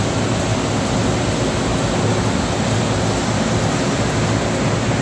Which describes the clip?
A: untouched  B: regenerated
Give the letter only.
A